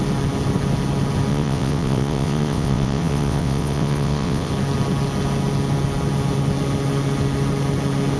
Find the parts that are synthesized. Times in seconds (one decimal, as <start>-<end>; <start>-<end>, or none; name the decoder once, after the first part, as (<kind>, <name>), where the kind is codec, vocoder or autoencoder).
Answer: 1.3-4.5 (vocoder, WaveNeXt)